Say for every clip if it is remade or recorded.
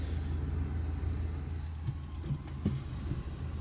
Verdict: recorded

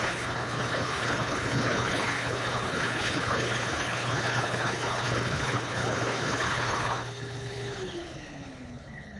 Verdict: remade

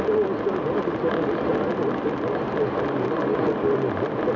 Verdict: recorded